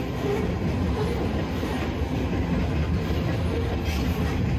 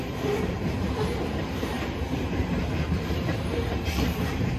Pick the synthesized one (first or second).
second